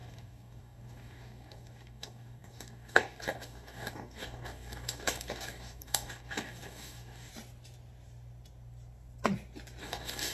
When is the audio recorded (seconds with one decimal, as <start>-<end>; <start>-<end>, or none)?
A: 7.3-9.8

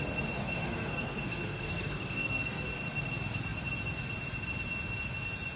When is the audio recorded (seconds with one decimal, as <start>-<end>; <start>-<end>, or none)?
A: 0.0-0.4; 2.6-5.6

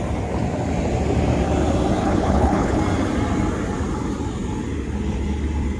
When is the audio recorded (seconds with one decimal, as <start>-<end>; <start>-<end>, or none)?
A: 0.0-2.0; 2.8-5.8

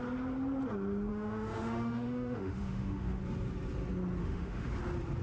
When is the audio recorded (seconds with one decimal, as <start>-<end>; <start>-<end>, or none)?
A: 0.0-1.1; 3.2-4.2; 4.7-5.2

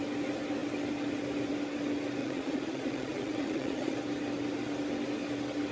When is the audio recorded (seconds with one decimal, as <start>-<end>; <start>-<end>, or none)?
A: 0.0-2.2; 4.0-5.7

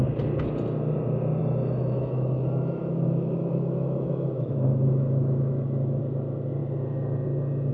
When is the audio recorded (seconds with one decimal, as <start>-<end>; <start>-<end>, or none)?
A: 0.0-1.4; 6.0-7.7

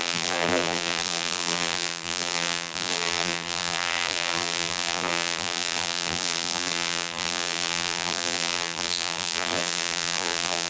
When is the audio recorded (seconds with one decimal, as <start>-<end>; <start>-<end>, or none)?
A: none

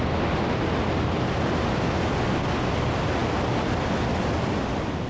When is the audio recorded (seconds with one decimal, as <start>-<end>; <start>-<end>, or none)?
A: 0.0-5.1